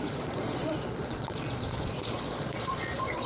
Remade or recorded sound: remade